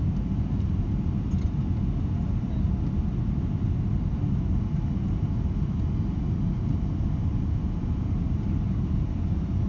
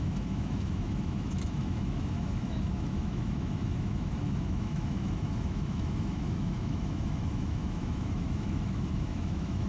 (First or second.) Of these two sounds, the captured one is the first